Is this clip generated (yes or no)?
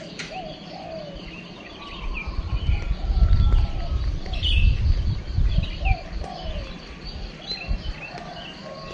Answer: no